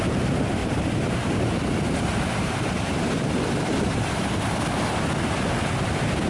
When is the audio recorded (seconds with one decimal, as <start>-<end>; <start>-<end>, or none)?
0.0-0.6; 4.4-6.3